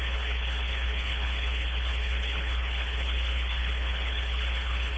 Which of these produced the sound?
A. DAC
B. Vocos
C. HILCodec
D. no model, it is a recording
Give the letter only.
C